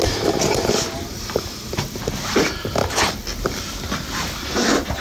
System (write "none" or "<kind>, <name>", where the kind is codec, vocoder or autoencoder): none